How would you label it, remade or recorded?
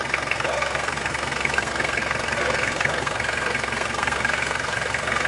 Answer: remade